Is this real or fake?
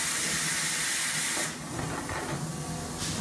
real